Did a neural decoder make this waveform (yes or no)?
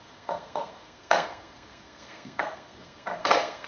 yes